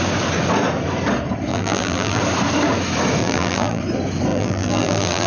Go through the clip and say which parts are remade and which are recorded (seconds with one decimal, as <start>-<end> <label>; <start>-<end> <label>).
0.0-1.5 recorded; 1.5-2.2 remade; 2.2-3.2 recorded; 3.2-3.8 remade; 3.8-4.3 recorded; 4.3-5.3 remade